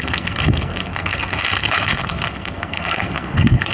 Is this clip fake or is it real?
fake